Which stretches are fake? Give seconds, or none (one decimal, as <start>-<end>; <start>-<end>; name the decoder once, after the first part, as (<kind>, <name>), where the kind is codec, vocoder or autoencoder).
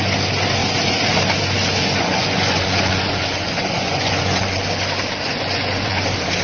1.8-4.6 (vocoder, Vocos); 5.2-6.0